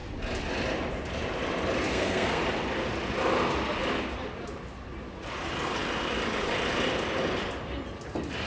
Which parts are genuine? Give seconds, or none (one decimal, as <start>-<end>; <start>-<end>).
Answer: 0.0-1.9; 2.4-8.5